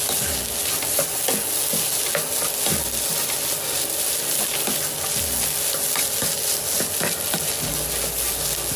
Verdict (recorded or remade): recorded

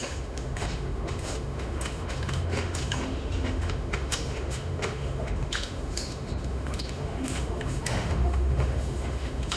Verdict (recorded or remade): remade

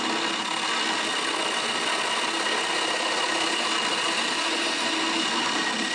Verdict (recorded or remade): recorded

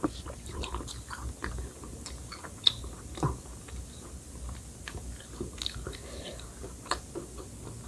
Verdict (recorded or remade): recorded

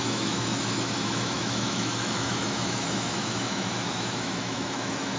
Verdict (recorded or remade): remade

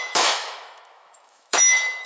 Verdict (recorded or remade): remade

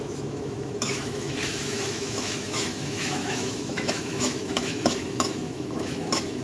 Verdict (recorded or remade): remade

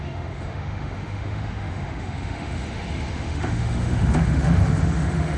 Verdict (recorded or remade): remade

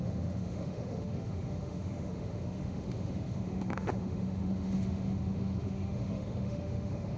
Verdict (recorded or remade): remade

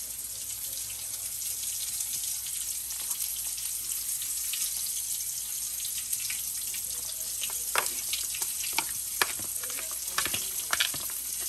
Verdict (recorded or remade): recorded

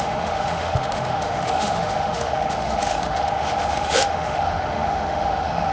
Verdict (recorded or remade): remade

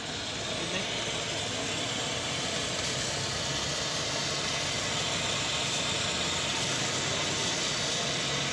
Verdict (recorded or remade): recorded